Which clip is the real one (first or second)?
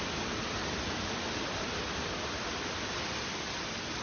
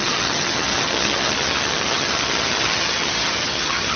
first